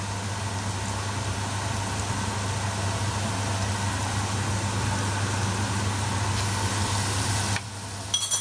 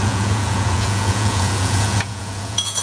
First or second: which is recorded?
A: first